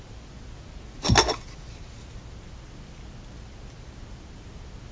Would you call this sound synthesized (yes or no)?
no